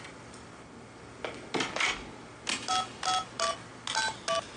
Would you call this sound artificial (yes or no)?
no